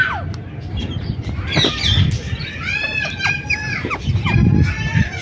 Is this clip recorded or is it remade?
remade